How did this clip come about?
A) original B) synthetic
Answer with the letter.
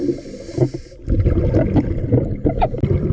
A